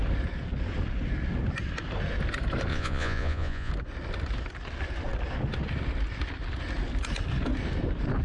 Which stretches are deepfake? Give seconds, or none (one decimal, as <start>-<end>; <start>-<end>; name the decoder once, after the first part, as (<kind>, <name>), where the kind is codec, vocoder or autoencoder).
2.7-3.7 (vocoder, Vocos)